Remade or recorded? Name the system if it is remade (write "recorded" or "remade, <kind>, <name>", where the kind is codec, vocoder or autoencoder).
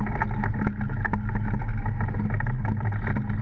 recorded